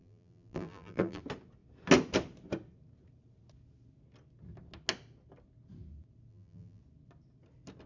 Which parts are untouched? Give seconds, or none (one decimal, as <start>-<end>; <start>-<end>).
1.2-6.3; 6.8-7.9